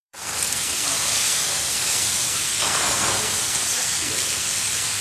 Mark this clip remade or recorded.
remade